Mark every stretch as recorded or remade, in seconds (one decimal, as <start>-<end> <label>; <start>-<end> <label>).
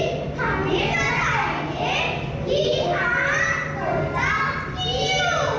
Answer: 0.0-5.6 recorded